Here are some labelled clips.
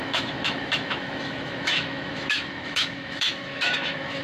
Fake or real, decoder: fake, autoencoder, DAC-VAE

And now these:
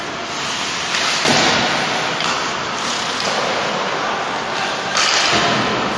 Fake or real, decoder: real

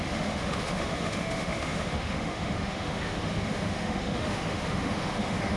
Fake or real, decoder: fake, autoencoder, DAC-VAE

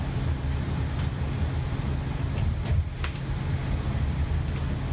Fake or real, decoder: real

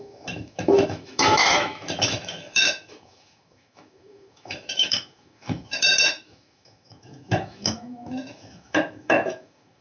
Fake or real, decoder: fake, autoencoder, DAC-VAE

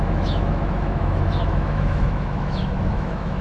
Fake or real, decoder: fake, autoencoder, DAC-VAE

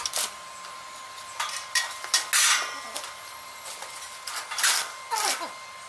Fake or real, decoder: real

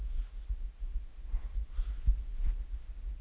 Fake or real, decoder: fake, autoencoder, DAC-VAE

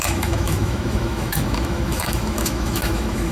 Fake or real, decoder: fake, autoencoder, DAC-VAE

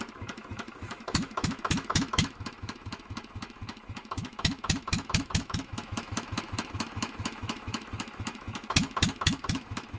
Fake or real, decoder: fake, autoencoder, DAC-VAE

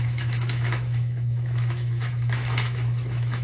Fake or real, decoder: fake, autoencoder, DAC-VAE